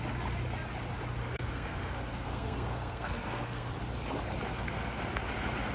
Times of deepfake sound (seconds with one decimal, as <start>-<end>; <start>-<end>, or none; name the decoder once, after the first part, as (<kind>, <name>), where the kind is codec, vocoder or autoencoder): 1.2-3.7 (codec, SNAC); 4.5-5.0